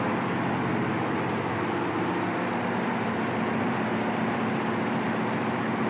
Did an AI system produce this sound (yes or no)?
no